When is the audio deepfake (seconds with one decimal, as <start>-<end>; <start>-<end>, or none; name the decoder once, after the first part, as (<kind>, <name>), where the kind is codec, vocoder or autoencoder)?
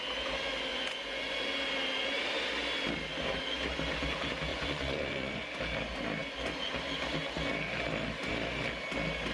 0.7-1.4 (vocoder, Vocos); 4.5-5.6